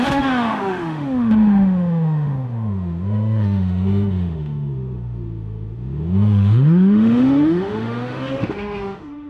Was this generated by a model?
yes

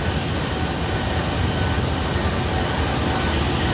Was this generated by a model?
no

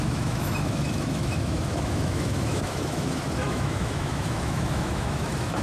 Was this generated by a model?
yes